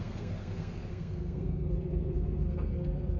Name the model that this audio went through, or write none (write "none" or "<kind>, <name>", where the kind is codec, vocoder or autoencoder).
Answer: codec, SNAC